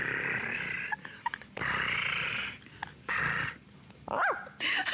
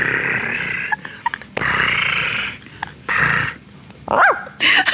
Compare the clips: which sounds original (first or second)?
second